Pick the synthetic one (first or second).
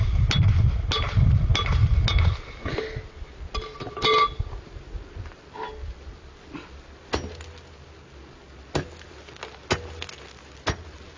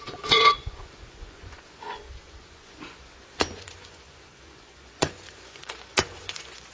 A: second